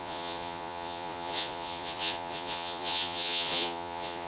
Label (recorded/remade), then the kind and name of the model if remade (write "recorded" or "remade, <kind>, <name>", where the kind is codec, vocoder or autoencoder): remade, vocoder, Vocos